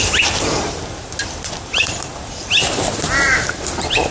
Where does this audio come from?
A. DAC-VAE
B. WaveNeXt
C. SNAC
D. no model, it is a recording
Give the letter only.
D